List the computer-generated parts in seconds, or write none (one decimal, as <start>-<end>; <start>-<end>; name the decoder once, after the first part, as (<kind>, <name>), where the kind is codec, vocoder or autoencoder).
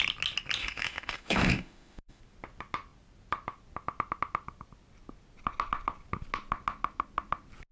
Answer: 0.6-2.2 (autoencoder, DAC-VAE)